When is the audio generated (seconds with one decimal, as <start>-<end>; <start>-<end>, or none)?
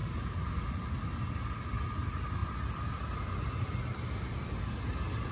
none